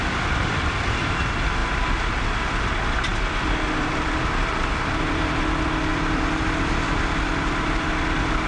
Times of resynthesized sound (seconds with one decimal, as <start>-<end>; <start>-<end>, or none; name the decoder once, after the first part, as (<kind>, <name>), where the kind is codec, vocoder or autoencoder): 0.4-1.2 (vocoder, BigVGAN v2); 1.6-2.6; 3.1-5.3; 5.9-6.4

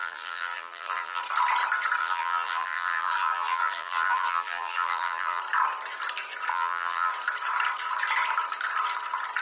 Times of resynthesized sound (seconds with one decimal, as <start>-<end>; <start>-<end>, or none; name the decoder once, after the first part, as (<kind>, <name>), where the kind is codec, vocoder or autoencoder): 0.0-1.2 (vocoder, BigVGAN v2); 2.0-5.4; 6.5-7.1

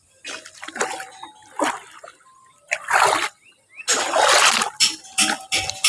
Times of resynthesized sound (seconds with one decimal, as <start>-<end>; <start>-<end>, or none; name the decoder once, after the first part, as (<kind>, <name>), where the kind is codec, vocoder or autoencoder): none

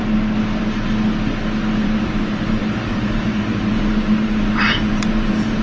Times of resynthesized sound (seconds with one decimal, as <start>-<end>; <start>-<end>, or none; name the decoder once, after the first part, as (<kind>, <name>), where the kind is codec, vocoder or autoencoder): 1.8-5.6 (vocoder, BigVGAN v2)

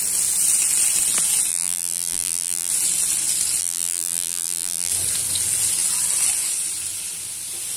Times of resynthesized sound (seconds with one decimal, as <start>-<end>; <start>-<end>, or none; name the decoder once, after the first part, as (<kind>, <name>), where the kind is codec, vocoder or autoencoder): 1.5-2.7 (vocoder, BigVGAN v2); 3.6-4.9

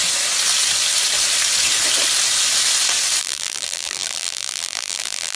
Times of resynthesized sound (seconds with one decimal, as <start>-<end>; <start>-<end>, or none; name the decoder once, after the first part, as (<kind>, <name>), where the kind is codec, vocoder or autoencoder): 3.2-5.4 (vocoder, BigVGAN v2)

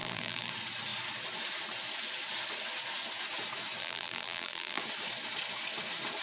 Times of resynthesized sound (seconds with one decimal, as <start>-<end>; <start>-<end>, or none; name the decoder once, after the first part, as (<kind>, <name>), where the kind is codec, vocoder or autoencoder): 0.0-0.5 (vocoder, BigVGAN v2); 3.8-4.8